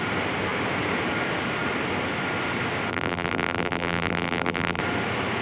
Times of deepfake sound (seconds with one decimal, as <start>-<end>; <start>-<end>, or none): 2.9-4.8